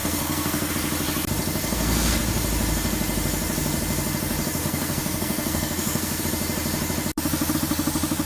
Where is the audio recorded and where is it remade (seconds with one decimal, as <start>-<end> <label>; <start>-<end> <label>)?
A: 0.0-0.7 remade; 0.7-1.6 recorded; 1.6-2.2 remade; 2.2-4.6 recorded; 4.6-6.2 remade; 6.2-8.3 recorded